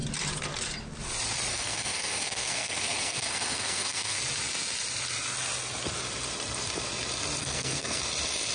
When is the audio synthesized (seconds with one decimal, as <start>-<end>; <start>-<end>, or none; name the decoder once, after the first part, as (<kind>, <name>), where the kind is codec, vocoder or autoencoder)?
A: 1.5-4.2 (codec, SNAC); 7.4-8.0